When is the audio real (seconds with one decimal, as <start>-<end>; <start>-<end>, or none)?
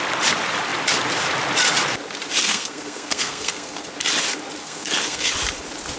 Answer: 0.0-2.4; 3.9-4.6; 5.3-6.0